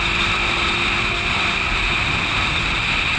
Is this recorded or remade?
recorded